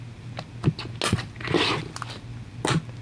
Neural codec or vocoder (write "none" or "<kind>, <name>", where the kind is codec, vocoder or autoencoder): none